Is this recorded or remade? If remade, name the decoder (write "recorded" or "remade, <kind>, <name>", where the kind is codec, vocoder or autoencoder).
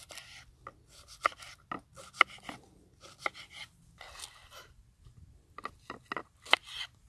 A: recorded